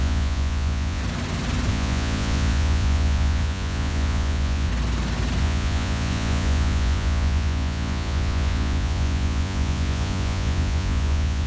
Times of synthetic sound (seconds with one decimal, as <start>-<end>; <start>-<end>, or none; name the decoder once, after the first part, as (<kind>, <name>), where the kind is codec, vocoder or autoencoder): 0.0-1.0 (vocoder, Vocos); 1.7-4.7; 5.4-11.5